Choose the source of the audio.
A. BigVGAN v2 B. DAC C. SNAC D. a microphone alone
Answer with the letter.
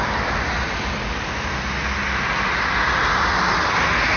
D